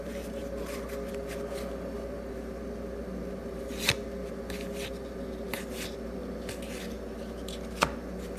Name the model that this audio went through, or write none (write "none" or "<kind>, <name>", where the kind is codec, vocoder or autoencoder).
none